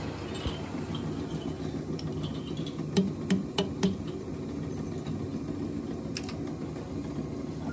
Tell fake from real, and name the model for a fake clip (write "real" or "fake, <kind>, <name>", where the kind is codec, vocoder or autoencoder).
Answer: real